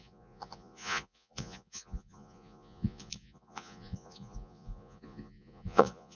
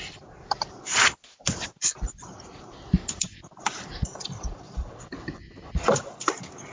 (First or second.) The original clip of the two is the second